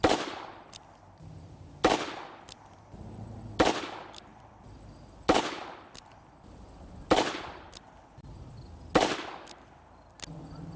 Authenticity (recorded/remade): recorded